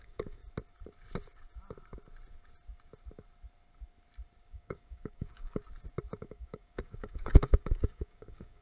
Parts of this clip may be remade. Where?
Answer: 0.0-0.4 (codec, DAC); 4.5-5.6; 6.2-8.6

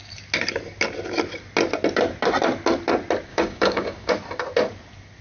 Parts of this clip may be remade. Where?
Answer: 3.3-4.1 (codec, DAC)